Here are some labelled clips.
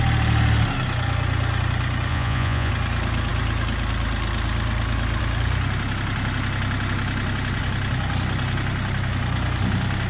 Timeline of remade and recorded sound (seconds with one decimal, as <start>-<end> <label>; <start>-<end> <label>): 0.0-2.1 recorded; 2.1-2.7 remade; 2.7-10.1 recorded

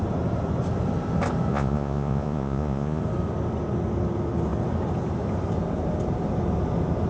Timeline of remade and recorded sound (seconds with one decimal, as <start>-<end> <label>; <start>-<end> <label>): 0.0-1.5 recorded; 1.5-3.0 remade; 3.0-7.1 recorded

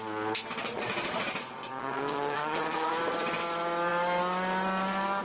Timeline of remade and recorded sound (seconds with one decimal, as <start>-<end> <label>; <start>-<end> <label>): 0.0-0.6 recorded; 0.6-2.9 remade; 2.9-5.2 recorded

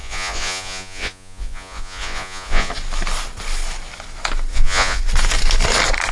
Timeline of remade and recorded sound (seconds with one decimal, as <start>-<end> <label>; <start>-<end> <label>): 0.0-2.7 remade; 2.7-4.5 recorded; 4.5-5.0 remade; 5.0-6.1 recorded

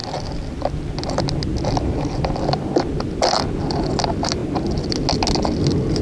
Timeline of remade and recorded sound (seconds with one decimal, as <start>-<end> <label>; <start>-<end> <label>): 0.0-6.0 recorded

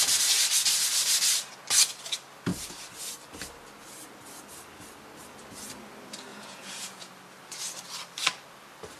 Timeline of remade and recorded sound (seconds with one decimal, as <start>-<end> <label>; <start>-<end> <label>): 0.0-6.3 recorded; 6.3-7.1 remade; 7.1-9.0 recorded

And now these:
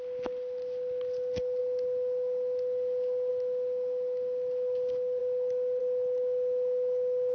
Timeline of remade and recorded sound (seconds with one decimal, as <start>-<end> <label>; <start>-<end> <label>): 0.0-7.3 recorded

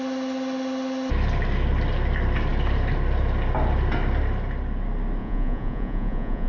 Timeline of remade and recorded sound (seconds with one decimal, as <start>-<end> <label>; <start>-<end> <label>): 0.0-5.2 recorded; 5.2-6.5 remade